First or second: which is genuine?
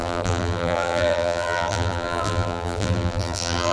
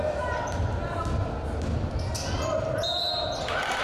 second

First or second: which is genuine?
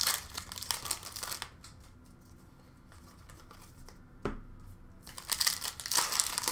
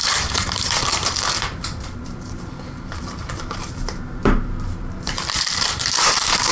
first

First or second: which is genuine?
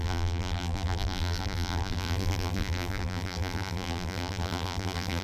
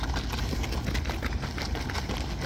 second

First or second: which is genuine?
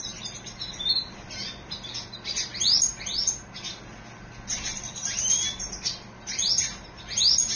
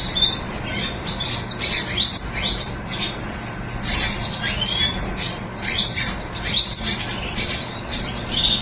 first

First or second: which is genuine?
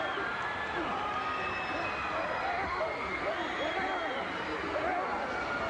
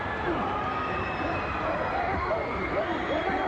first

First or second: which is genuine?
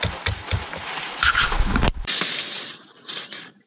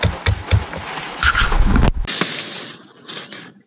second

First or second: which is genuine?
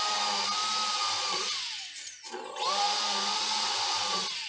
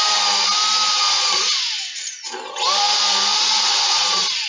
second